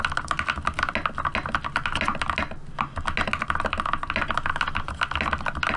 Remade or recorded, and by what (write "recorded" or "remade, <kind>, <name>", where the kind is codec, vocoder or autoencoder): recorded